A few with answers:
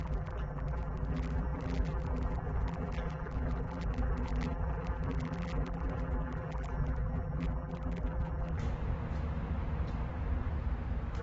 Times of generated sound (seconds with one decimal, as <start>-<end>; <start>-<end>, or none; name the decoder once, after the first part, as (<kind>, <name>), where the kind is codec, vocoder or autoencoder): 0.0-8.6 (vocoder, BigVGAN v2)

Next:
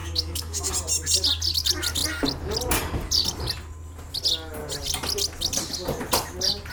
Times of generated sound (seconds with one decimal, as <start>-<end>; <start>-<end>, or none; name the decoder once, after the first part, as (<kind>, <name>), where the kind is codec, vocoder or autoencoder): 0.0-0.7 (codec, DAC)

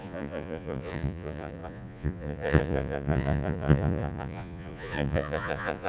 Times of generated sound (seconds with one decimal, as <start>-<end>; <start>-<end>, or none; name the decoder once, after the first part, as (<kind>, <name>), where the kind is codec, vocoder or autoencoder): 0.0-5.9 (vocoder, Vocos)